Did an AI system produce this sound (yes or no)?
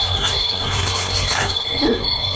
yes